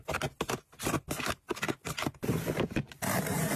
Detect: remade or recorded recorded